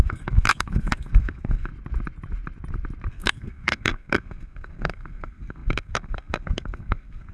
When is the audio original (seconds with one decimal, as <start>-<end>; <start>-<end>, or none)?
1.7-3.1